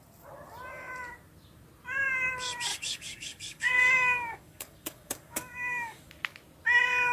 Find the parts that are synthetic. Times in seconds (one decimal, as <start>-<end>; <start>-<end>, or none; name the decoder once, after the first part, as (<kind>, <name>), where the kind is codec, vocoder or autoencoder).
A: 2.7-6.1 (codec, DAC)